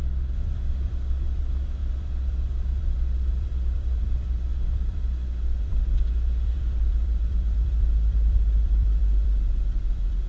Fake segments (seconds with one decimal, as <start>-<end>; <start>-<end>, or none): 0.0-10.3